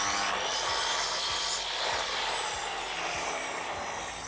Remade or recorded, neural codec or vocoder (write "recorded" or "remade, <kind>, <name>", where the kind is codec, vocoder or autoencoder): recorded